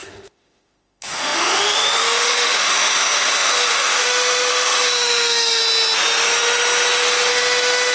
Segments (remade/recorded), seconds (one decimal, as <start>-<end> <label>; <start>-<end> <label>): 0.0-5.6 remade; 5.6-7.3 recorded; 7.3-7.9 remade